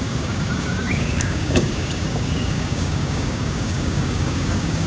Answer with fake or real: fake